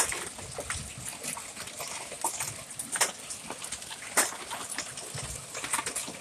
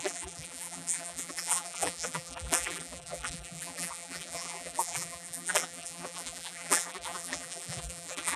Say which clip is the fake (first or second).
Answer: second